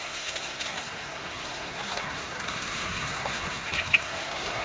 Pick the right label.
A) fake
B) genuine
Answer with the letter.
A